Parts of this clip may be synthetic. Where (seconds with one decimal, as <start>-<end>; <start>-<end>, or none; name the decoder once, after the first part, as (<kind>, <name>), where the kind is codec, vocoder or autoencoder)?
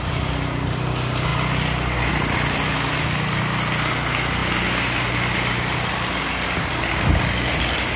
none